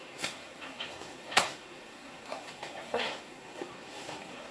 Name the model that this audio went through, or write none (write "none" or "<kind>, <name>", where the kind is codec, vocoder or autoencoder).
codec, SNAC